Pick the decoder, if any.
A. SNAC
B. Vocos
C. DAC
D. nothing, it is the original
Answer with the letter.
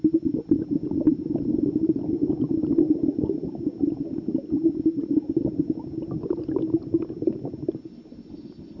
D